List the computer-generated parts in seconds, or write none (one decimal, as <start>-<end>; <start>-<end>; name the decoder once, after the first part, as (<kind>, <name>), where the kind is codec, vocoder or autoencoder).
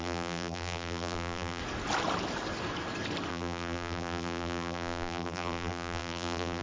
0.0-1.6 (vocoder, BigVGAN v2); 3.3-6.6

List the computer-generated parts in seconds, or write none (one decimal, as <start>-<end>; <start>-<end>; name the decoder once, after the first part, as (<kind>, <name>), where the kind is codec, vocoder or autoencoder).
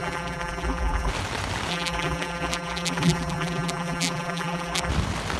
0.0-1.1 (vocoder, BigVGAN v2); 1.7-4.9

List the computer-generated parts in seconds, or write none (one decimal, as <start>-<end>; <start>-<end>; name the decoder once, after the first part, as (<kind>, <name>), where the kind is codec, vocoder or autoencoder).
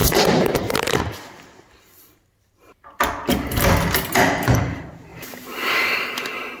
0.0-3.0 (vocoder, BigVGAN v2); 5.1-5.7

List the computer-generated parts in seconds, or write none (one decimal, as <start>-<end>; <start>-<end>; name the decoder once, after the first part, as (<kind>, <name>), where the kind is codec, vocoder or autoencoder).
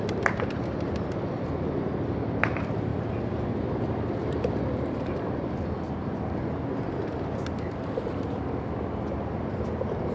4.2-5.8 (vocoder, BigVGAN v2)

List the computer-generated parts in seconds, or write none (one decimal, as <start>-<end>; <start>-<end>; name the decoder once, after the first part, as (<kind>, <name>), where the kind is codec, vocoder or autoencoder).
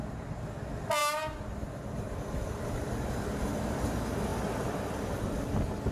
none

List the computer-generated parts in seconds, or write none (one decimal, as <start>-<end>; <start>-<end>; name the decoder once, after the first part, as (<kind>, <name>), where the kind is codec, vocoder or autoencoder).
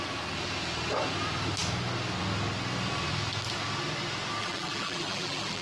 4.4-5.6 (vocoder, BigVGAN v2)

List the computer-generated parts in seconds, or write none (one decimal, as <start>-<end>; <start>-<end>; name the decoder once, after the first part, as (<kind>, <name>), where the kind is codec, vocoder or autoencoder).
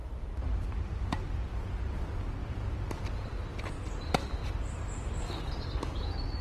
0.0-1.5 (vocoder, BigVGAN v2); 2.4-3.6